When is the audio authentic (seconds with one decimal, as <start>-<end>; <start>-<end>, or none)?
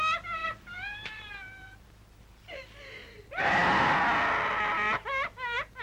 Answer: 0.0-0.4; 3.9-5.8